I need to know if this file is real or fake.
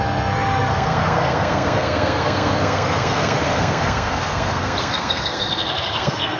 fake